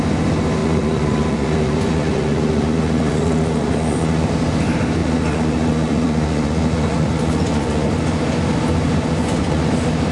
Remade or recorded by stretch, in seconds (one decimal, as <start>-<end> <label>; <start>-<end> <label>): 0.0-0.6 recorded; 0.6-4.3 remade; 4.3-5.0 recorded; 5.0-7.9 remade; 7.9-9.2 recorded; 9.2-9.7 remade; 9.7-10.1 recorded